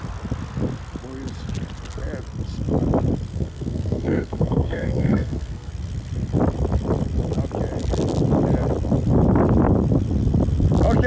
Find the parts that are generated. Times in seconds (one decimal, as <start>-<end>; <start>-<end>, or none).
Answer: 3.3-5.7

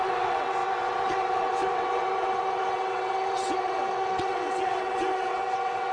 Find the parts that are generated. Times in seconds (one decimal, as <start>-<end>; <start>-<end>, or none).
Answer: 0.0-5.9

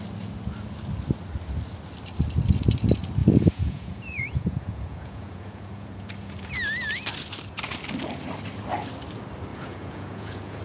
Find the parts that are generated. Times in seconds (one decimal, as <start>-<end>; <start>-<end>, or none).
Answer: 3.2-6.5; 9.5-10.6